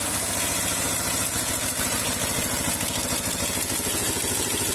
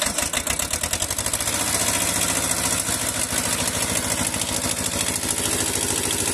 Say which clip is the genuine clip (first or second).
second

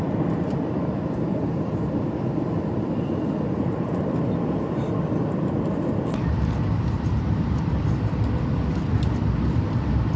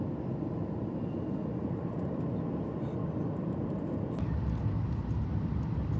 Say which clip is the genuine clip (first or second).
second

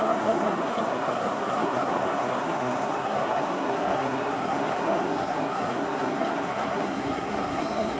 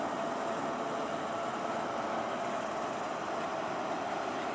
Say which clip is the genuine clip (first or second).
second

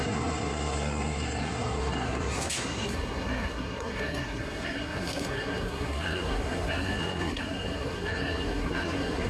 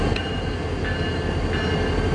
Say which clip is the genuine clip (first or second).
second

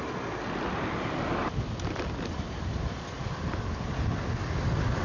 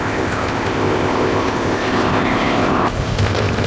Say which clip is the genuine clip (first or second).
first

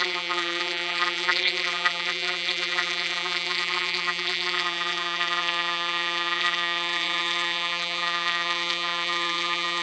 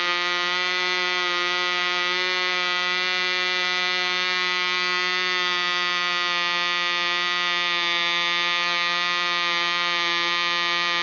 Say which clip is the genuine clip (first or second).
second